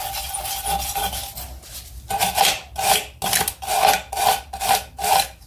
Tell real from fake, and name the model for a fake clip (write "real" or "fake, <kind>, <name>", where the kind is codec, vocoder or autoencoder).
real